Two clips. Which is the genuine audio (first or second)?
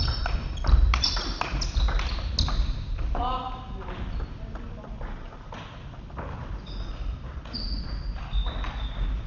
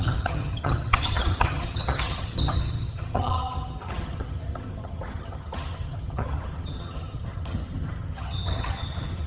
first